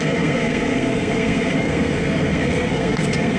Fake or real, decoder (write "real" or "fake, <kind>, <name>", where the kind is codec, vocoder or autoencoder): fake, codec, SNAC